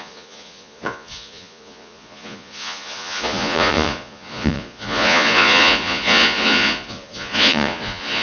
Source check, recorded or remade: remade